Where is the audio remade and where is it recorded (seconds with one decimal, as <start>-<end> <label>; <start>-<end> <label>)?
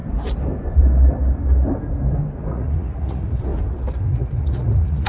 0.0-2.5 recorded; 2.5-3.5 remade; 3.5-4.0 recorded; 4.0-5.1 remade